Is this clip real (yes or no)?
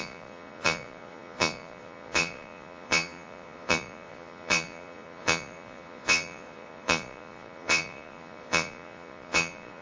no